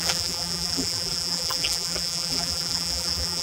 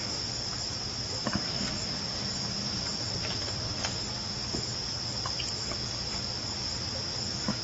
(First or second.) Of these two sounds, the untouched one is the second